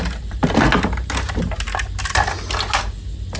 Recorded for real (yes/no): yes